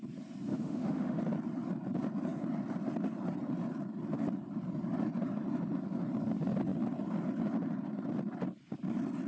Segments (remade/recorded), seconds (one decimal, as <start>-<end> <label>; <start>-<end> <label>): 0.0-0.5 recorded; 0.5-1.2 remade; 1.2-9.3 recorded